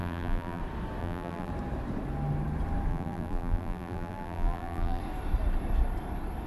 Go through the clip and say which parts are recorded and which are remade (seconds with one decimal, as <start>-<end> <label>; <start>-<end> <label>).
0.0-0.6 remade; 0.6-1.0 recorded; 1.0-1.5 remade; 1.5-2.9 recorded; 2.9-5.0 remade; 5.0-6.5 recorded